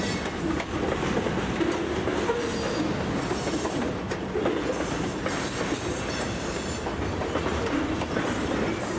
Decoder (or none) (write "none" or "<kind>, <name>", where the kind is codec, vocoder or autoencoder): none